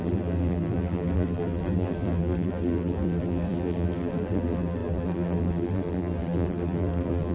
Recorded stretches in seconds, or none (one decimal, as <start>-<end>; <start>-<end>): none

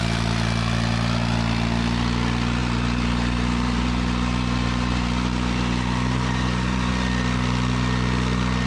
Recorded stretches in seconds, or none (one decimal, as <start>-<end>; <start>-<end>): 0.0-2.6; 6.9-8.7

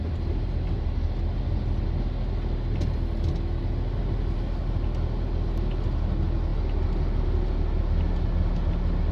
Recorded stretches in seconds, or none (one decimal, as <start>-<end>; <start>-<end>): 0.0-9.1

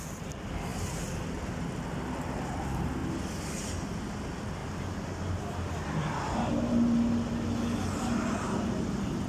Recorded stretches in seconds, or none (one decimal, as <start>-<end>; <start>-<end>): 0.0-4.6; 6.5-9.3

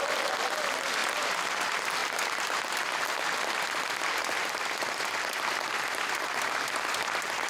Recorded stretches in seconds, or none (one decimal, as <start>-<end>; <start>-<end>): none